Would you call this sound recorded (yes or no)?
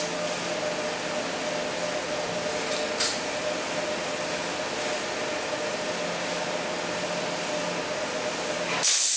yes